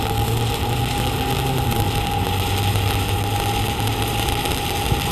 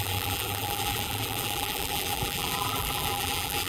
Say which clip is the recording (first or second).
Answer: first